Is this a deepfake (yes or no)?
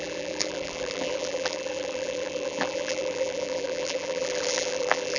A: yes